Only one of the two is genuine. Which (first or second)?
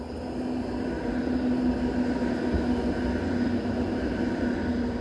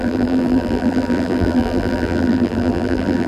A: first